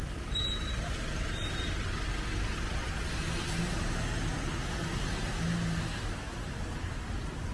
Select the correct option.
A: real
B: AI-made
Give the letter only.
A